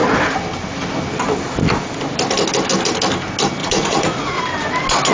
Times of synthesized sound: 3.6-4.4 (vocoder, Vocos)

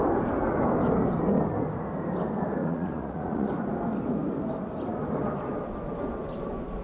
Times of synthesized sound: 2.6-3.5 (vocoder, Vocos)

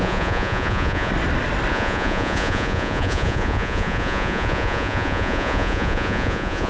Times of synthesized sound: 0.0-1.1 (vocoder, Vocos); 1.7-6.7

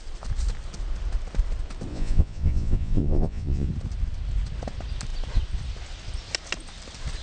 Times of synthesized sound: 1.9-3.7 (vocoder, Vocos)

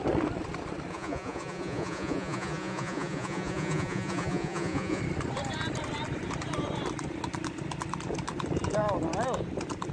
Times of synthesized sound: 0.9-5.0 (vocoder, Vocos)

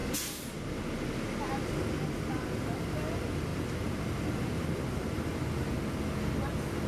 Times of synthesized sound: none

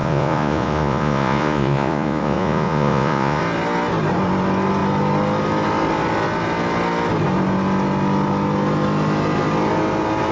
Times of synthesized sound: 0.0-3.4 (vocoder, Vocos)